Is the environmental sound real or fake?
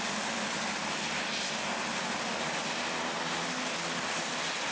real